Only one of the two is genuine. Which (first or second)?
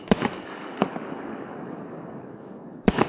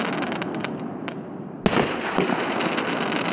second